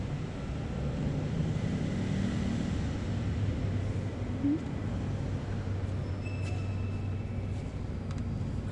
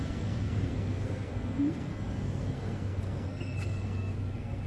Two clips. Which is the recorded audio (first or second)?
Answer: first